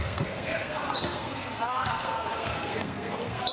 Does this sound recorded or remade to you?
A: remade